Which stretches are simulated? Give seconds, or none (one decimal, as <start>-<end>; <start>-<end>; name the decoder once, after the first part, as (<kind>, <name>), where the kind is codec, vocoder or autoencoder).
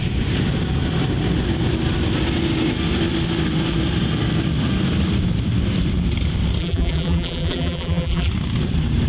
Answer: 6.6-8.3 (vocoder, BigVGAN v2)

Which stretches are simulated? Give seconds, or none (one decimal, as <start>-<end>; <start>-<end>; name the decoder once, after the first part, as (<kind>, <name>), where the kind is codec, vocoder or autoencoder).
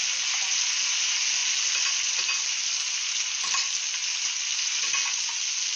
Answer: none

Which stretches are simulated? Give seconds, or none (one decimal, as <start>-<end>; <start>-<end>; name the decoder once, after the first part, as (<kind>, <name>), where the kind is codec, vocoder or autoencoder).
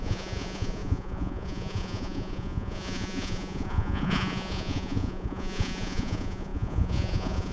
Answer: 0.0-7.5 (vocoder, Vocos)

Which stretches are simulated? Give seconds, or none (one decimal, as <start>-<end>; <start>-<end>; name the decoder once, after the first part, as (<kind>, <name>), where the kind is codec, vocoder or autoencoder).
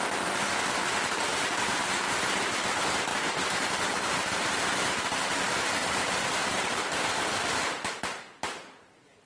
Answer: 1.3-2.7 (vocoder, BigVGAN v2); 3.1-4.4; 5.8-8.0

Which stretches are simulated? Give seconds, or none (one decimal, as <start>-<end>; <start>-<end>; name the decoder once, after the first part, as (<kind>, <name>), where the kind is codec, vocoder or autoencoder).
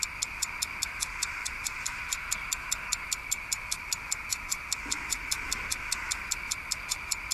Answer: 1.4-2.0 (vocoder, BigVGAN v2)